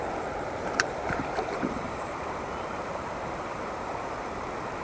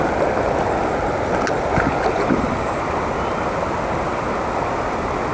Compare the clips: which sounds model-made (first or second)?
first